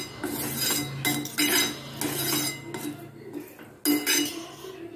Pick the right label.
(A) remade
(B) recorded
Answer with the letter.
B